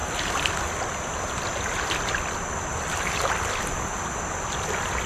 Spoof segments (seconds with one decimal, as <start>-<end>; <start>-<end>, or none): none